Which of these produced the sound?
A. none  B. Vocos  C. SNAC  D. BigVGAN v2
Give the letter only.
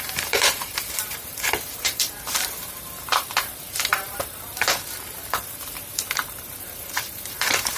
D